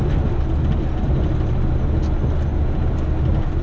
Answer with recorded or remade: recorded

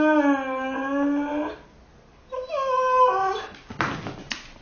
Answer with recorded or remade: recorded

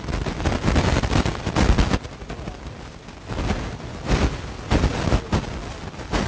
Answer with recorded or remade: recorded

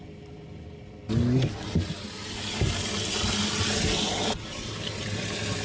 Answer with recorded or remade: recorded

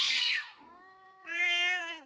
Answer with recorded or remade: remade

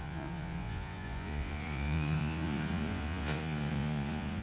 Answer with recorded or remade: remade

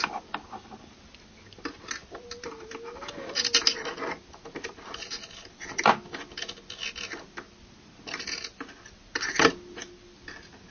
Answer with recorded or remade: recorded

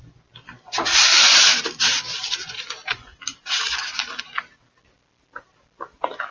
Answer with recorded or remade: recorded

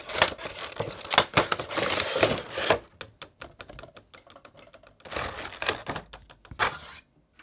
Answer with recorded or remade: recorded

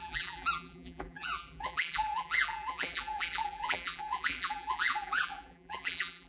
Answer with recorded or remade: remade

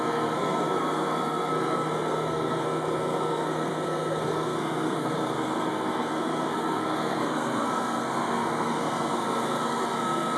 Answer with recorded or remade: remade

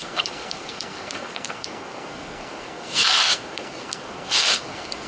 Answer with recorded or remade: remade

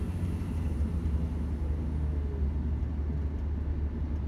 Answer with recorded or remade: recorded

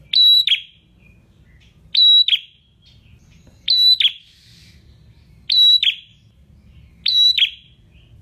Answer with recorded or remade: recorded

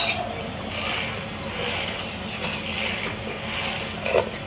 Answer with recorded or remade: recorded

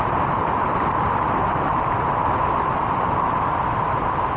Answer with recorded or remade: recorded